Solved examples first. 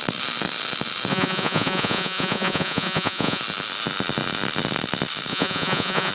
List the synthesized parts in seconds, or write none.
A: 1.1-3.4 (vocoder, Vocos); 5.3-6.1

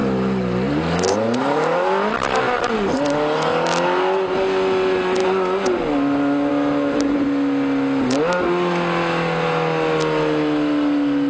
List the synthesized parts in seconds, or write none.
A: none

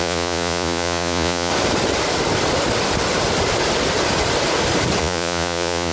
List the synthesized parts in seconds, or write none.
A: 0.0-1.5 (vocoder, Vocos); 5.0-5.9

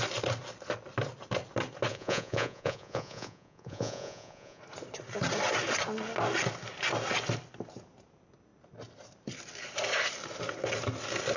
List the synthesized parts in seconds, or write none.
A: 1.9-4.6 (vocoder, Vocos)

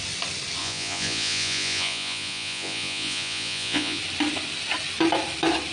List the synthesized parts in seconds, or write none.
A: 0.6-4.0 (vocoder, Vocos)

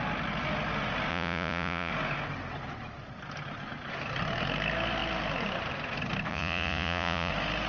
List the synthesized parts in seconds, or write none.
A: 1.1-1.9 (vocoder, Vocos); 6.3-7.3

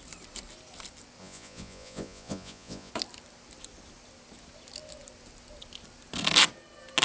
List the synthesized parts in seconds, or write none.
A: 1.2-2.9 (vocoder, Vocos)